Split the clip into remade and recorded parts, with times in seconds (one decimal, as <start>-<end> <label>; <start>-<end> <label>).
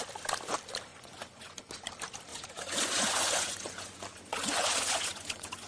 0.0-0.9 recorded; 0.9-1.6 remade; 1.6-2.3 recorded; 2.3-5.7 remade